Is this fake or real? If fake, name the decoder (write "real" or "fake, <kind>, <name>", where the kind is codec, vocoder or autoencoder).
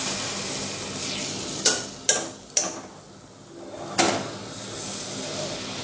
real